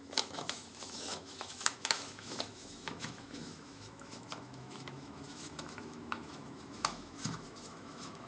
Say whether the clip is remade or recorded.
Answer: remade